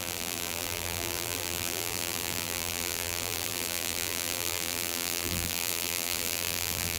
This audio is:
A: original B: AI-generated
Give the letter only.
B